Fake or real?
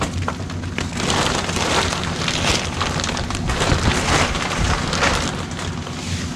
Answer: real